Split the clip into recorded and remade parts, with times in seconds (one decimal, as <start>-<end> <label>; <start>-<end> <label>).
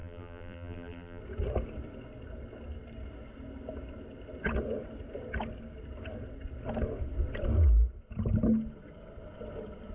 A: 0.0-1.2 remade; 1.2-9.9 recorded